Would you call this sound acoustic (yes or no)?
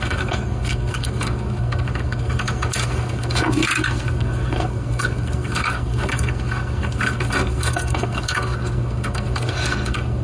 no